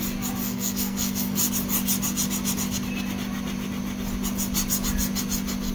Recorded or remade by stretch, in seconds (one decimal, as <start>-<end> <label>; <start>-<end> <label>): 0.0-0.4 recorded; 0.4-1.5 remade; 1.5-5.7 recorded